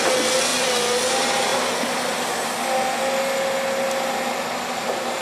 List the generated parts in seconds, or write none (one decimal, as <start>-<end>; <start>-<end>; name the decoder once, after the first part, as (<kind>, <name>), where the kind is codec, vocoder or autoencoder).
none